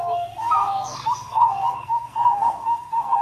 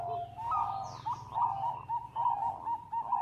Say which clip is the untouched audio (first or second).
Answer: second